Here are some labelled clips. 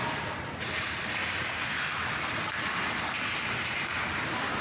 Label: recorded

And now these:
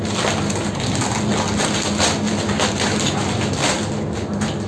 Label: recorded